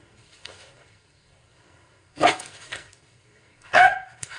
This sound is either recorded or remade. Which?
remade